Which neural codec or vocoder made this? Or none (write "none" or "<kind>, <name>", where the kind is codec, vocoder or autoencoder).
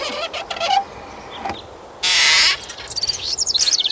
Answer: none